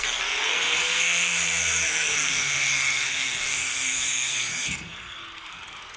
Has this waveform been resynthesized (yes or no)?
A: yes